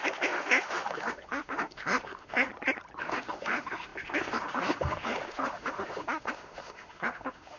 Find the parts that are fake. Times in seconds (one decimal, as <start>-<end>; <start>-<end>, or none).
0.0-2.5; 3.0-7.6